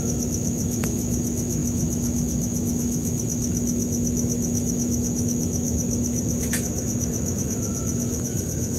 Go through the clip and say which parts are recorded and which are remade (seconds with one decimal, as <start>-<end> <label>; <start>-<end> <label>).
0.0-8.8 remade